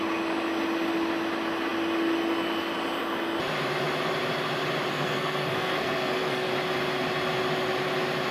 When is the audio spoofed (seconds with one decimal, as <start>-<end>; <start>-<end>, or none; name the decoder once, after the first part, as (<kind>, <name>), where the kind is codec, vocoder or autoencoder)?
4.9-6.5 (codec, SNAC)